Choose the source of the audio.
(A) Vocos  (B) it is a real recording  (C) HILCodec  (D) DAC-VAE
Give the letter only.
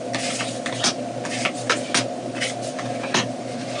B